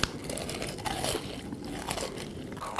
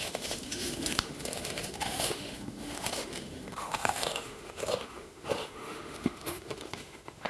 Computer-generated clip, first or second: second